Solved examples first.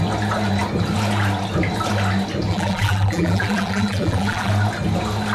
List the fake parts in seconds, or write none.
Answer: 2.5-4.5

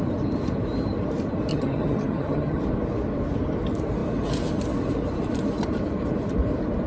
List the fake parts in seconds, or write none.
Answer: 1.5-2.6

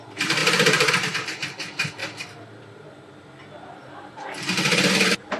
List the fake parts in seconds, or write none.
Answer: 0.0-2.0; 2.6-5.4

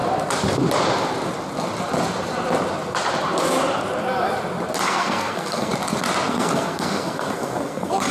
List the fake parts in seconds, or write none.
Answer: 4.8-5.7; 6.3-8.1